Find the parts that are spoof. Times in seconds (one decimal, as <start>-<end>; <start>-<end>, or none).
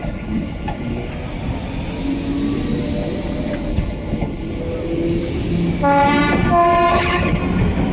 0.0-1.1; 3.7-4.6; 6.9-7.4